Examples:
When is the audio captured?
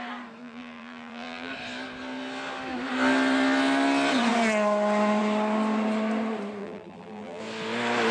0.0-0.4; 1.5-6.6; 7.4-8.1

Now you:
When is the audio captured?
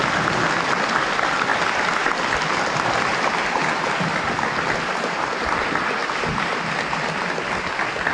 0.0-6.0; 6.9-8.1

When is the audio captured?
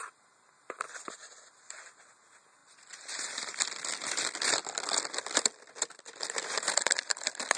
0.0-7.6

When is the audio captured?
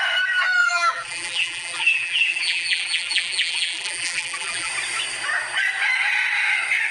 0.0-0.6; 4.7-6.9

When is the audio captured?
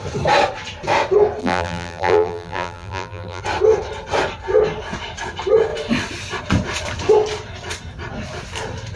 0.0-1.4; 3.4-9.0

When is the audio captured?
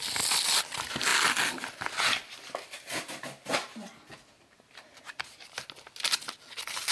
0.0-6.9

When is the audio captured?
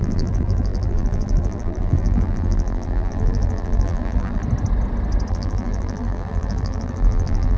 4.4-5.3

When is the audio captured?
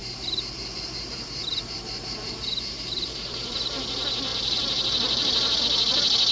3.8-4.3; 5.6-6.3